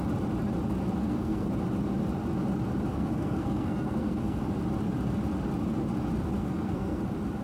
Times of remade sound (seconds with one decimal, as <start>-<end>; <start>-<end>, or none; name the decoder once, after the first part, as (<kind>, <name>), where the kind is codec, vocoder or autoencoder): 1.0-1.5 (codec, SNAC); 2.9-4.4; 6.4-7.0